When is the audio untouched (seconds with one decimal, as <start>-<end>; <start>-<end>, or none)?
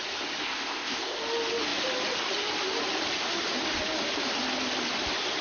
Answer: 0.0-0.4; 1.2-5.4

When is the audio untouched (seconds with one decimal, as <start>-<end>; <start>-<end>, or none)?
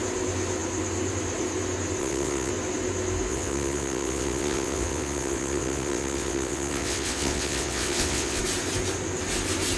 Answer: 0.0-2.0; 2.5-3.3; 8.4-9.8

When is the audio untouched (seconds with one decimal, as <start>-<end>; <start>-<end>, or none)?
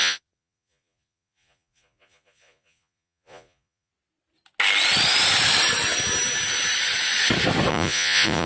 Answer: 3.9-7.7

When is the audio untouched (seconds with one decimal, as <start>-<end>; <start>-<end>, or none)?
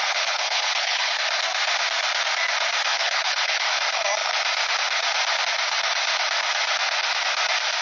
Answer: 1.1-2.9; 3.7-7.8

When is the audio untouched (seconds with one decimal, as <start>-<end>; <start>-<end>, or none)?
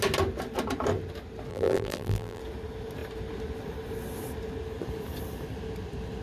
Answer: 0.0-1.5; 2.4-6.2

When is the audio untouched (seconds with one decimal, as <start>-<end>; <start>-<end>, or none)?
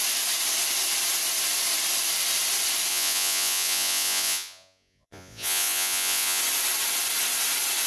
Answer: 0.0-2.9; 6.4-7.9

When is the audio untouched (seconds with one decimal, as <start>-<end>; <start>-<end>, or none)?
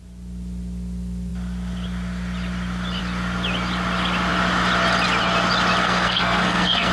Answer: 0.0-5.8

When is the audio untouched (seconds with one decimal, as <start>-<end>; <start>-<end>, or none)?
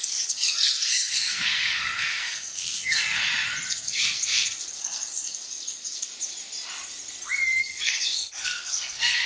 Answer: 3.2-3.7; 6.1-7.6